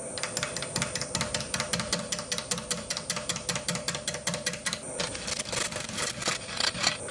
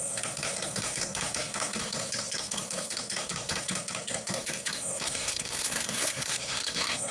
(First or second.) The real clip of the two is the first